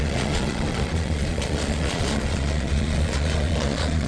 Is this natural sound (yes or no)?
no